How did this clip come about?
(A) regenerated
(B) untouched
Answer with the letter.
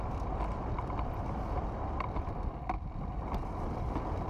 B